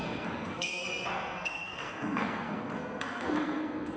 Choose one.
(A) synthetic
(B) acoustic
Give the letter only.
A